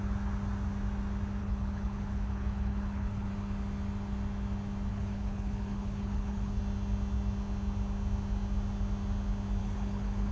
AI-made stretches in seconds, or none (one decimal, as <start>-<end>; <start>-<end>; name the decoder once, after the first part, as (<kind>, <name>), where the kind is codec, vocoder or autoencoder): 1.4-3.3 (codec, HILCodec); 4.9-6.6; 9.6-10.3